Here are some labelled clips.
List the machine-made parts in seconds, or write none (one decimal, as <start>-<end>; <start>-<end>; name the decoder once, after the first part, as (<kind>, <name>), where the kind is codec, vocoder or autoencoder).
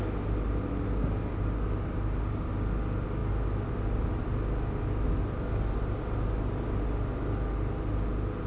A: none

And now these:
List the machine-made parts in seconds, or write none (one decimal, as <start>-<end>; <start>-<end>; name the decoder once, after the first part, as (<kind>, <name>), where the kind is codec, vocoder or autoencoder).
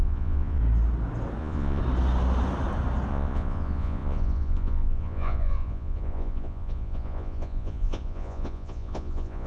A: 0.0-0.6 (vocoder, Vocos); 1.4-1.8; 3.1-9.5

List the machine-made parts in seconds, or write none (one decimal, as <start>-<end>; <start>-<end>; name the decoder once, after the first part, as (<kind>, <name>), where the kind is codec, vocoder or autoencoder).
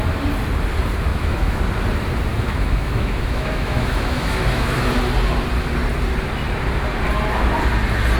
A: 1.1-1.6 (autoencoder, DAC-VAE); 2.3-4.8